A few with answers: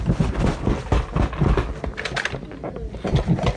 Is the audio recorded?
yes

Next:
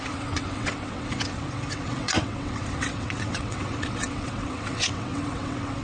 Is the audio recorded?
no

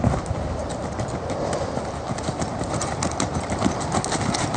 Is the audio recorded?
yes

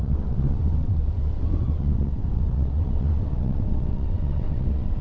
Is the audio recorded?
no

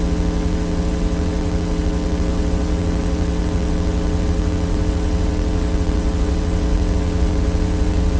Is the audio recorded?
no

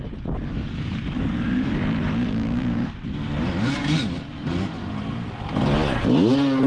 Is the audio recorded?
yes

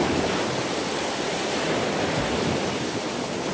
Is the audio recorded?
yes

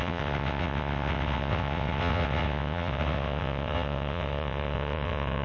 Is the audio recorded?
no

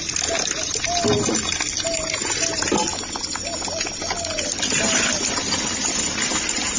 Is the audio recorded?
yes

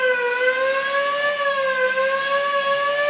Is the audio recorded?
yes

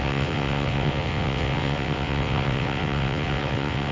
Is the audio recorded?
no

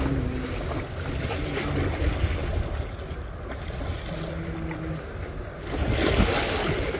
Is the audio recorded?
yes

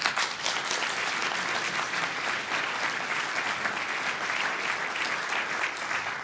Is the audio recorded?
yes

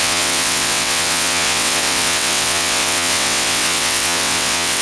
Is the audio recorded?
no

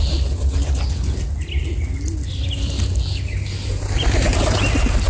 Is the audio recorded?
yes